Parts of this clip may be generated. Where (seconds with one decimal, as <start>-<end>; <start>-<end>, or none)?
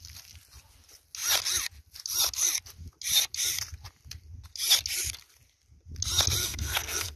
6.4-7.2